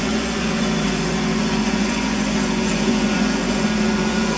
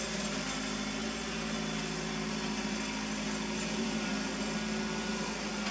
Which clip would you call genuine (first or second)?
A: second